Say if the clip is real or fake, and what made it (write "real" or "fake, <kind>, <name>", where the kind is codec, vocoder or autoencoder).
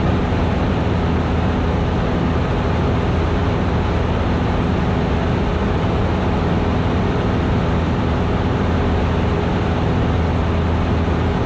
real